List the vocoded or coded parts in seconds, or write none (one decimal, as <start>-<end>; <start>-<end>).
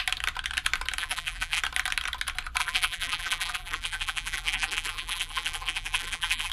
1.0-1.6; 2.6-6.5